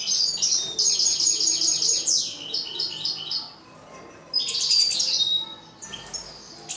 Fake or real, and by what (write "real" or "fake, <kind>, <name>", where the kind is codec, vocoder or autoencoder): real